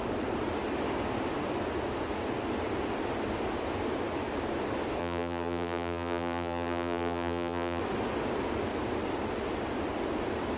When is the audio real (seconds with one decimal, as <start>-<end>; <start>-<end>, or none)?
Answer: 0.0-5.0; 7.8-10.6